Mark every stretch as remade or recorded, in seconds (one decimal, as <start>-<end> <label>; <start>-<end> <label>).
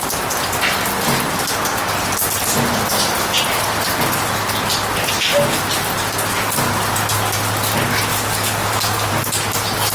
0.0-8.1 recorded; 8.1-9.1 remade; 9.1-9.9 recorded